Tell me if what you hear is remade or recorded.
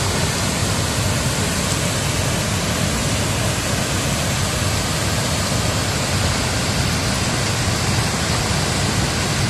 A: recorded